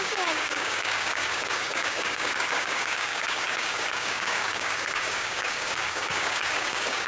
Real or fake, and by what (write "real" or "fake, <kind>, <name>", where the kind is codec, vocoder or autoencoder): fake, codec, DAC